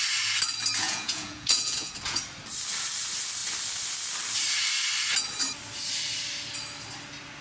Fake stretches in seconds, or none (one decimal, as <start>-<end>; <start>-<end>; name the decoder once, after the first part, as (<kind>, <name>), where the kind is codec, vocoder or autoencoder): 0.8-2.2 (vocoder, Vocos)